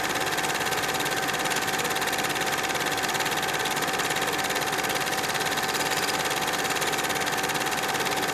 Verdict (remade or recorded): recorded